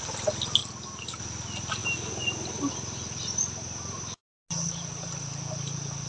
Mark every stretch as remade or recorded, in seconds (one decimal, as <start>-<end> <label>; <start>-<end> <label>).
0.0-6.1 recorded